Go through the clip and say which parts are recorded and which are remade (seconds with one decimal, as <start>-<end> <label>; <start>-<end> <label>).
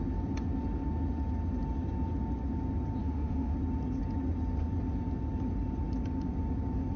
0.0-3.0 recorded; 3.0-3.5 remade; 3.5-7.0 recorded